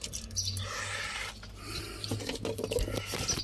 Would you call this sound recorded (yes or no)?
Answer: yes